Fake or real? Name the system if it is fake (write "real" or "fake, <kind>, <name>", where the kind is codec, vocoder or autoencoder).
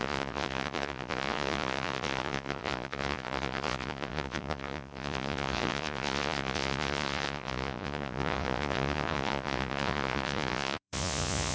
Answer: fake, vocoder, Vocos